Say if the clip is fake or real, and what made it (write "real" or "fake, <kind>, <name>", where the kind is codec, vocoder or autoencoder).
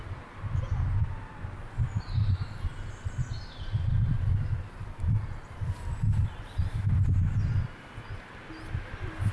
real